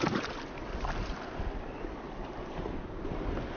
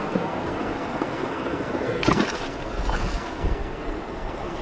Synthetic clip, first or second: second